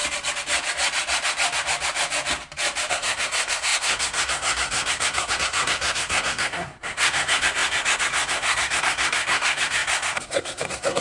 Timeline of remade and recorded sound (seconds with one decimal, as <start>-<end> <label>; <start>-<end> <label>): 0.0-2.9 recorded; 2.9-11.0 remade